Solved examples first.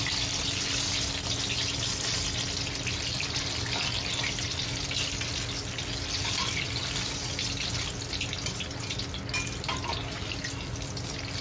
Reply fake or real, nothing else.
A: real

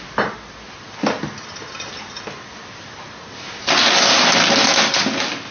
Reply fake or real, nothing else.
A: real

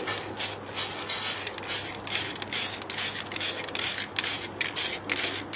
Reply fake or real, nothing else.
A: real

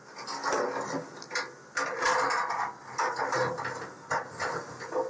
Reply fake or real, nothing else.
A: real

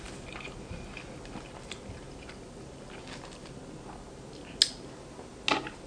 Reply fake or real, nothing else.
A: real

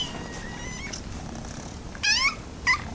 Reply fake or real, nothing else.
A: real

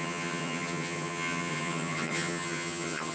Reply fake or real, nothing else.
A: fake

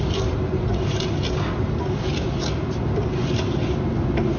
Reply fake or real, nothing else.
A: real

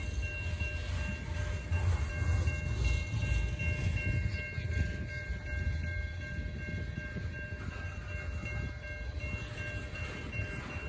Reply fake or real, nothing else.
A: real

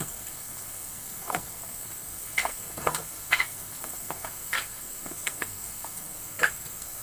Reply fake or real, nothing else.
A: fake